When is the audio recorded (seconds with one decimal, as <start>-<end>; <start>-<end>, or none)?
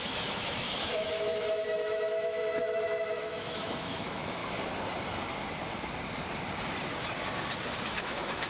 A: 4.4-8.0